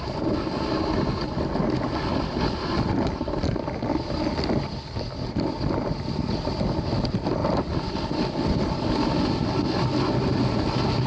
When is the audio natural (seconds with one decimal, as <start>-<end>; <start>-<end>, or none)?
0.0-11.1